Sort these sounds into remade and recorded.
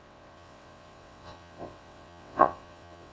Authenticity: remade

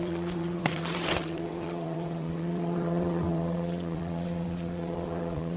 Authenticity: remade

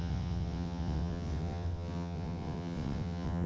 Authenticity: remade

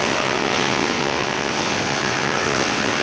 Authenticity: remade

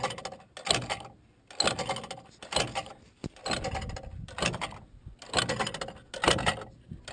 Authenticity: recorded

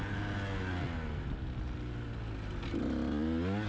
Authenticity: recorded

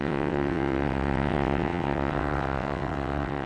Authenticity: remade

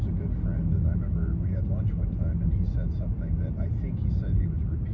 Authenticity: recorded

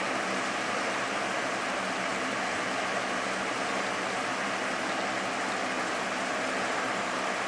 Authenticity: recorded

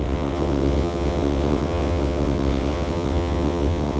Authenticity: remade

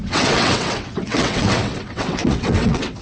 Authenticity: remade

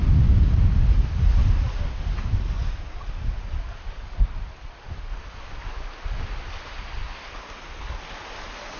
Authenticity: recorded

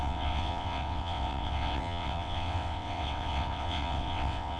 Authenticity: remade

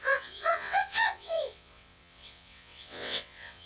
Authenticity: remade